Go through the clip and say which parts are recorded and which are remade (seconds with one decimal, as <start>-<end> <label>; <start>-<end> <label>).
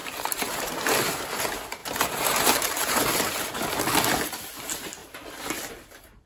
0.0-1.4 remade; 1.4-1.8 recorded; 1.8-3.0 remade; 3.0-6.3 recorded